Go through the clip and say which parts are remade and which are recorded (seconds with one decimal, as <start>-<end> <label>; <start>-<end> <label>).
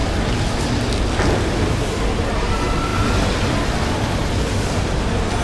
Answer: 0.0-5.4 recorded